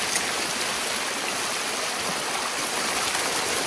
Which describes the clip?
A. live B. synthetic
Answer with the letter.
A